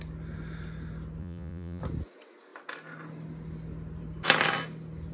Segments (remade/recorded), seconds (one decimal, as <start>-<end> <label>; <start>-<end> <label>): 0.0-1.2 recorded; 1.2-1.8 remade; 1.8-5.1 recorded